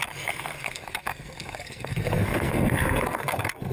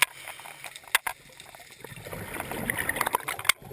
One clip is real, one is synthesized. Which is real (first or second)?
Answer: second